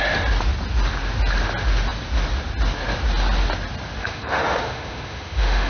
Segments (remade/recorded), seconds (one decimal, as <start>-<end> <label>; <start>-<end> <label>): 0.0-4.0 recorded; 4.0-5.7 remade